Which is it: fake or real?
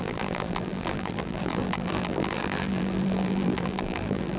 fake